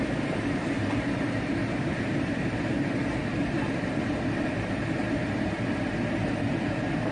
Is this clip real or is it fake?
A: fake